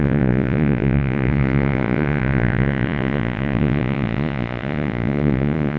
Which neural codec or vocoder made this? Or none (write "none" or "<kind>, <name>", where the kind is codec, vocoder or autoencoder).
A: vocoder, Vocos